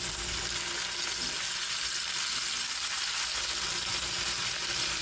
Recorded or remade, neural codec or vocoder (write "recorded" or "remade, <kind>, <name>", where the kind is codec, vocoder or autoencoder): recorded